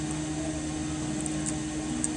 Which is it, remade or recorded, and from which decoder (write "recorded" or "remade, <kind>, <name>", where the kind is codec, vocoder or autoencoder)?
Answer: recorded